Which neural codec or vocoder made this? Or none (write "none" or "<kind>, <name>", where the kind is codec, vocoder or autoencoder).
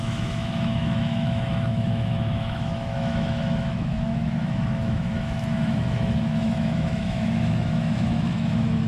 autoencoder, DAC-VAE